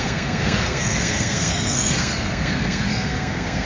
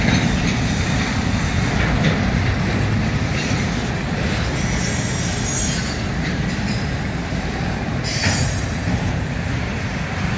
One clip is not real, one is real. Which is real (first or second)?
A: second